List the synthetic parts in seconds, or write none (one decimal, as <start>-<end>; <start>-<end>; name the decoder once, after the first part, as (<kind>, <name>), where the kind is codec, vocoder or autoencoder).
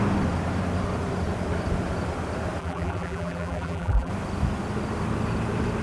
2.6-4.1 (vocoder, BigVGAN v2)